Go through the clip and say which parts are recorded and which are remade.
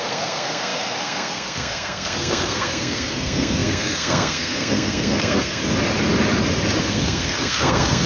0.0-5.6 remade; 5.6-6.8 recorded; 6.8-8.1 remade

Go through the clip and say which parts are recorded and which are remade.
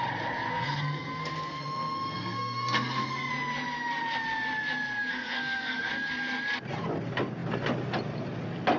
0.0-0.5 recorded; 0.5-3.3 remade; 3.3-5.1 recorded; 5.1-5.9 remade; 5.9-8.8 recorded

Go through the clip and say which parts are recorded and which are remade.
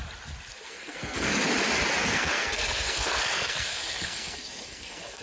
0.0-0.5 recorded; 0.5-1.3 remade; 1.3-2.0 recorded; 2.0-5.2 remade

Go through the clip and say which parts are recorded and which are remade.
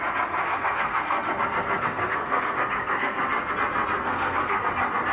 0.0-0.4 recorded; 0.4-3.5 remade; 3.5-4.0 recorded; 4.0-4.6 remade; 4.6-5.1 recorded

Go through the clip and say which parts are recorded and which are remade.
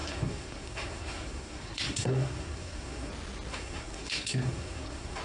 0.0-3.1 remade; 3.1-3.5 recorded; 3.5-5.2 remade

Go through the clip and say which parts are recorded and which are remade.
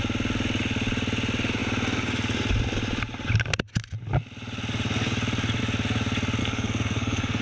0.0-6.4 recorded; 6.4-7.4 remade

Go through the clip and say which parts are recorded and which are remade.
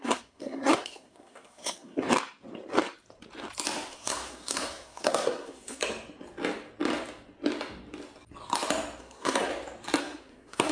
0.0-2.0 remade; 2.0-3.9 recorded; 3.9-5.8 remade; 5.8-9.0 recorded; 9.0-9.5 remade; 9.5-10.0 recorded; 10.0-10.7 remade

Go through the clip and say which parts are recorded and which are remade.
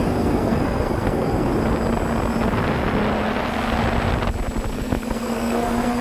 0.0-1.5 remade; 1.5-4.7 recorded; 4.7-6.0 remade